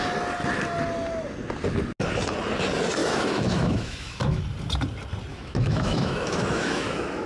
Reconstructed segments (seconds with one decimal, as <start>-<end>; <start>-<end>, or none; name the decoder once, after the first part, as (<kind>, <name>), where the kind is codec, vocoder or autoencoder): 3.0-4.4 (autoencoder, DAC-VAE); 5.3-7.3